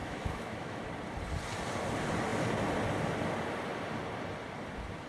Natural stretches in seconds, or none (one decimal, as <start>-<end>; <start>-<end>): 0.9-5.1